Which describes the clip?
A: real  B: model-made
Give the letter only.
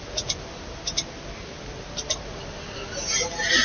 A